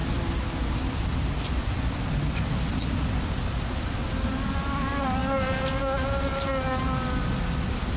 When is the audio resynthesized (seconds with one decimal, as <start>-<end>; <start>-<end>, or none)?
none